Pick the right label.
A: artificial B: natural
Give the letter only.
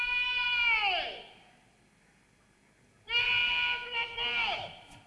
B